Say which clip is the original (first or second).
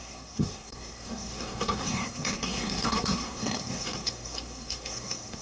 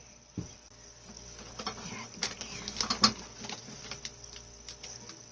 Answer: second